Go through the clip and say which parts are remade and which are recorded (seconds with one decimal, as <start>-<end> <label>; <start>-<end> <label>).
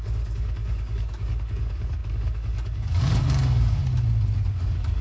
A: 0.0-3.8 remade; 3.8-4.5 recorded; 4.5-5.0 remade